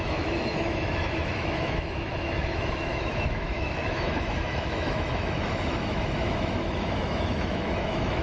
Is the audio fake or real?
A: fake